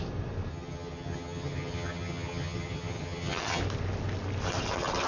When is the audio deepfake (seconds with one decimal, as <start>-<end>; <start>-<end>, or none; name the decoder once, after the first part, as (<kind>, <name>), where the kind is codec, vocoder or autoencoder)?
0.5-3.6 (vocoder, HiFi-GAN)